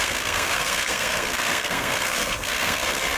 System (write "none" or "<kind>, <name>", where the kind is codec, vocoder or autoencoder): codec, SNAC